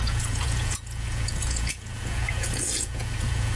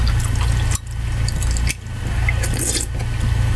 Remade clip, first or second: first